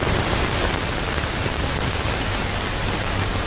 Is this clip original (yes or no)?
yes